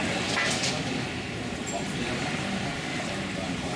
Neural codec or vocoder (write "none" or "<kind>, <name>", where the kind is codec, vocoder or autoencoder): none